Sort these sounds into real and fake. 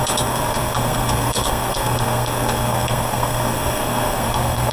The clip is fake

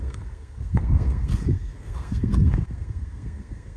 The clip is fake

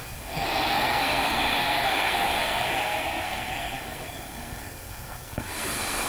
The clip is fake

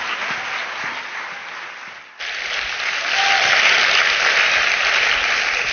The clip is real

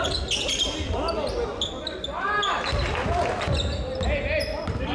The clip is real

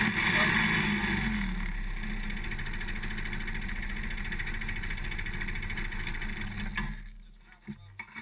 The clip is real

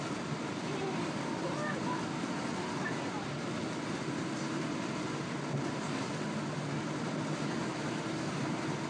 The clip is real